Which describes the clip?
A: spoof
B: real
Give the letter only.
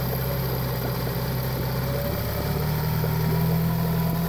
B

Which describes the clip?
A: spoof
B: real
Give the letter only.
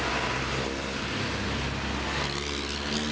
B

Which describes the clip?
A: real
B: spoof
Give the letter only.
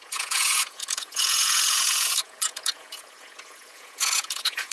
B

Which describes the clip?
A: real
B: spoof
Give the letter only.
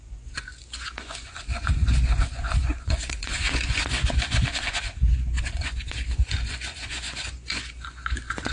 B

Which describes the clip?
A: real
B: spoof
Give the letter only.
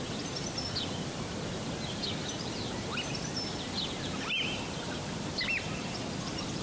A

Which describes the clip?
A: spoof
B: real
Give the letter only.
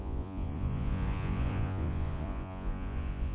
A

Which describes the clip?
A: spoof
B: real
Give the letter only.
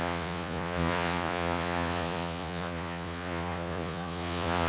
A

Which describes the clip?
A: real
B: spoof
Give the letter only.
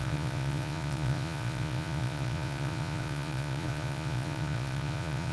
B